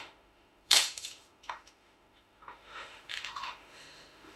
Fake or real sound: fake